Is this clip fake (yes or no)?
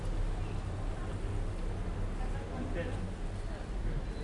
no